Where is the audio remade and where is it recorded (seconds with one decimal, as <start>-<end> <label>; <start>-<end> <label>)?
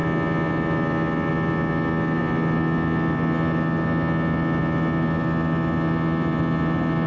0.0-7.1 recorded